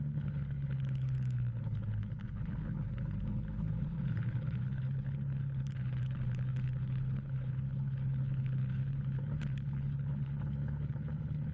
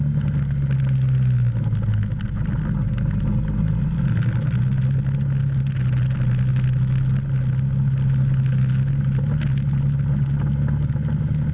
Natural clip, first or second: second